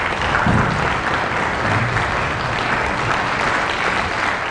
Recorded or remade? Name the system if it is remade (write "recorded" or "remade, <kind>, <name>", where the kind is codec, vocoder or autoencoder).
recorded